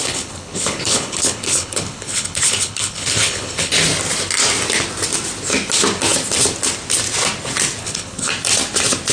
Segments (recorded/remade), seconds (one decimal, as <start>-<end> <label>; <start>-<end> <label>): 0.0-3.7 remade; 3.7-7.8 recorded; 7.8-8.3 remade; 8.3-9.1 recorded